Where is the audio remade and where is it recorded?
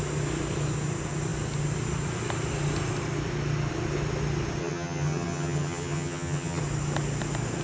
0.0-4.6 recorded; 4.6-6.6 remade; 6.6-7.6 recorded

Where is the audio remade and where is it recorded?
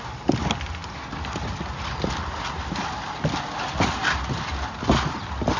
0.0-5.6 recorded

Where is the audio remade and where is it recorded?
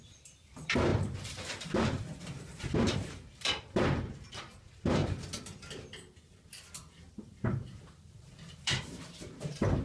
0.0-5.0 remade; 5.0-7.2 recorded; 7.2-9.8 remade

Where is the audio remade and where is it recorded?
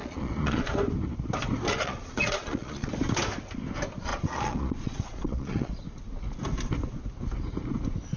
0.0-0.7 remade; 0.7-1.7 recorded; 1.7-2.9 remade; 2.9-4.1 recorded; 4.1-5.7 remade; 5.7-8.2 recorded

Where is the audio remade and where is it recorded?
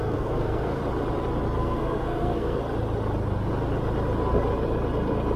0.0-0.8 remade; 0.8-1.6 recorded; 1.6-2.6 remade; 2.6-5.4 recorded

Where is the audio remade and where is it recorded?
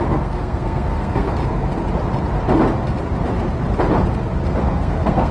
0.0-1.4 remade; 1.4-4.6 recorded; 4.6-5.3 remade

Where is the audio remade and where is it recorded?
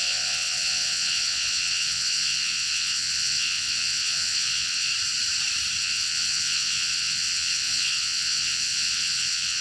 0.0-4.9 remade; 4.9-5.8 recorded; 5.8-9.6 remade